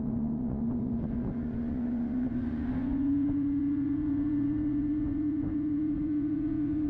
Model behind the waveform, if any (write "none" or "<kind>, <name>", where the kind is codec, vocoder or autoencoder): vocoder, Vocos